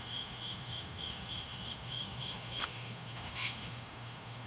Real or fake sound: fake